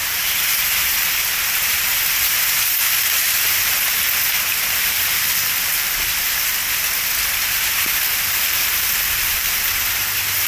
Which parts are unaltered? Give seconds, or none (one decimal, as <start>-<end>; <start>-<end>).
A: 0.8-4.8; 6.6-7.9